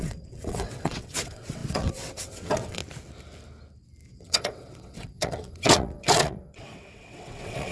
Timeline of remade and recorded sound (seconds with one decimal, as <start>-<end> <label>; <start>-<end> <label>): 0.0-2.8 remade; 2.8-4.1 recorded; 4.1-7.7 remade